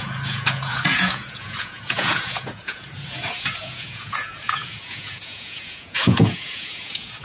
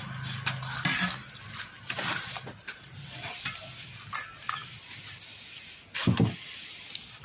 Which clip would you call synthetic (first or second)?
first